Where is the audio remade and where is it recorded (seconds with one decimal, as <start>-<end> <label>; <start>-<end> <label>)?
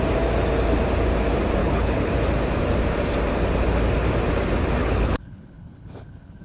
0.0-1.6 recorded; 1.6-2.1 remade; 2.1-4.8 recorded; 4.8-6.4 remade